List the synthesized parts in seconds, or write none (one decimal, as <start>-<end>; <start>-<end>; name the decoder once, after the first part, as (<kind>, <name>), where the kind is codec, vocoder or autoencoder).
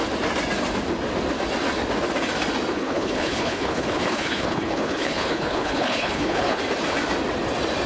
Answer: 2.7-6.6 (codec, HILCodec)